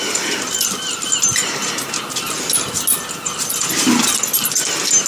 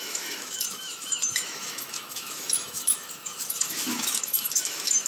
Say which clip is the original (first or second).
first